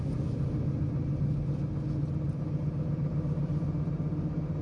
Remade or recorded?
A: recorded